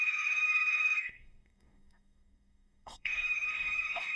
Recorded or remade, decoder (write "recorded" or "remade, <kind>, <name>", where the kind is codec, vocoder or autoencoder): remade, codec, DAC